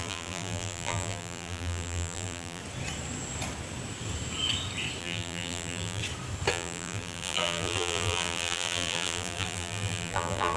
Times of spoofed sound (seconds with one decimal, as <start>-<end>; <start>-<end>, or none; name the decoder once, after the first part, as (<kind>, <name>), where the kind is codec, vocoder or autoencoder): 0.0-2.6 (vocoder, BigVGAN v2); 5.0-6.0; 6.5-10.6